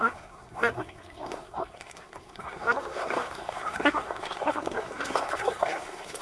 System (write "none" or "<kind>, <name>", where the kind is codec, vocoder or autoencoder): codec, SNAC